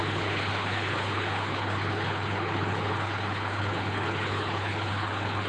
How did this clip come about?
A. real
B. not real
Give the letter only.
B